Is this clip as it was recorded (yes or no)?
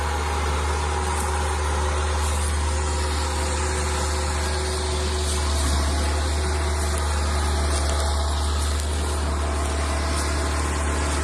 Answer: yes